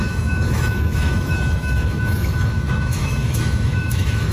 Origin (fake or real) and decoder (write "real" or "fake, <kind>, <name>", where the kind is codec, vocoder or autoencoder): fake, autoencoder, DAC-VAE